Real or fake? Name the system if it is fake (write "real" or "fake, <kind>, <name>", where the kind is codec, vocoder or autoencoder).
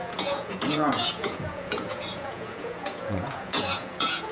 fake, vocoder, Vocos